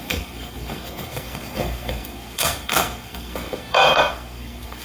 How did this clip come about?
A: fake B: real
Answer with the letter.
A